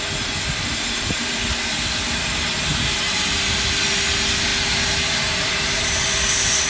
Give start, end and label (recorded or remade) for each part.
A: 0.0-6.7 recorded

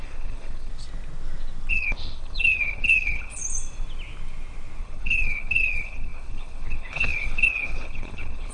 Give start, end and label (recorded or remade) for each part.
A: 0.0-0.7 remade; 0.7-1.7 recorded; 1.7-3.4 remade; 3.4-4.8 recorded; 4.8-8.5 remade

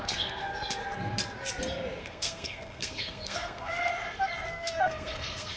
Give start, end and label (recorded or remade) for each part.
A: 0.0-0.8 remade; 0.8-2.0 recorded; 2.0-3.9 remade; 3.9-4.5 recorded; 4.5-5.6 remade

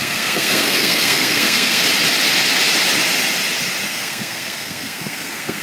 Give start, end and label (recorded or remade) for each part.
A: 0.0-1.8 remade; 1.8-3.9 recorded; 3.9-5.6 remade

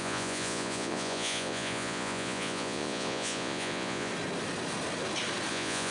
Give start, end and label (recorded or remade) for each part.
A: 0.0-4.1 remade; 4.1-5.5 recorded; 5.5-5.9 remade

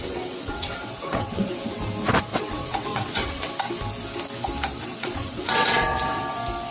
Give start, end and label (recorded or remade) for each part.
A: 0.0-1.8 remade; 1.8-2.3 recorded; 2.3-3.5 remade; 3.5-4.8 recorded; 4.8-6.2 remade; 6.2-6.7 recorded

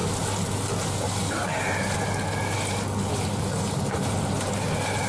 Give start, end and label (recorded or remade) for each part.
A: 0.0-5.1 recorded

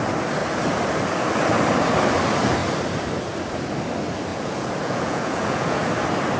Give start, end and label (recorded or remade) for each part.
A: 0.0-4.3 recorded; 4.3-5.9 remade; 5.9-6.4 recorded